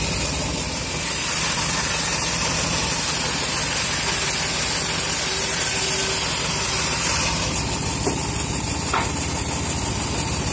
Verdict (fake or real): real